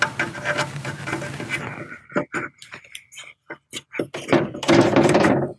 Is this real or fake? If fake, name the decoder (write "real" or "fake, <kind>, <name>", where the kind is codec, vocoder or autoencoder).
real